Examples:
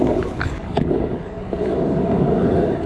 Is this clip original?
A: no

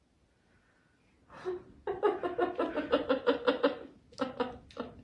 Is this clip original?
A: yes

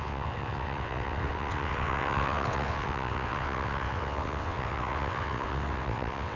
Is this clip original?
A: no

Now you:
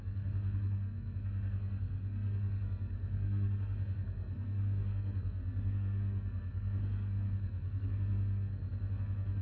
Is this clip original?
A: no